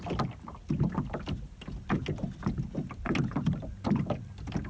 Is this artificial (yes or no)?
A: no